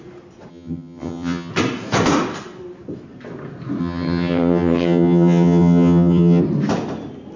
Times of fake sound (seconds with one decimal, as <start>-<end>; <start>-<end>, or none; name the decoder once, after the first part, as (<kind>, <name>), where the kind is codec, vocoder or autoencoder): 0.5-1.5 (vocoder, HiFi-GAN); 3.8-6.4